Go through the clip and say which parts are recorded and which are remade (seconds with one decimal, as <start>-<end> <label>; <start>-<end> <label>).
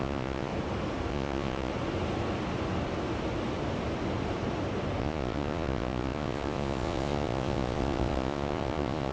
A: 0.0-0.5 remade; 0.5-1.1 recorded; 1.1-1.7 remade; 1.7-5.0 recorded; 5.0-9.1 remade